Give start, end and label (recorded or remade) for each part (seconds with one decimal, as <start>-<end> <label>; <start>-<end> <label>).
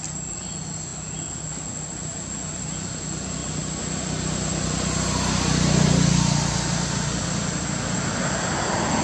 0.0-9.0 recorded